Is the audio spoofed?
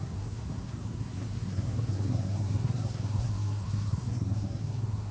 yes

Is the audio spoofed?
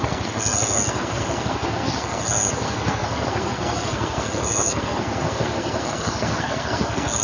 yes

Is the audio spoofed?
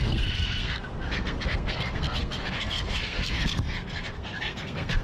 yes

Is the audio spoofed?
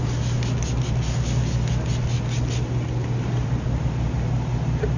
no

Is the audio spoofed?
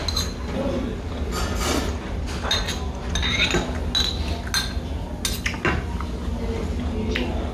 no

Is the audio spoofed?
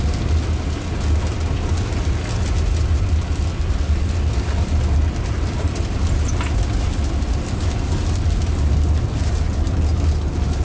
no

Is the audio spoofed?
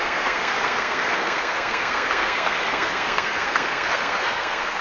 yes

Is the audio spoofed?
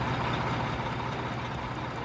no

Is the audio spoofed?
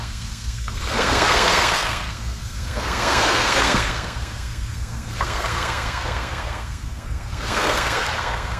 yes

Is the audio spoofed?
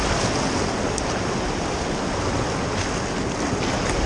no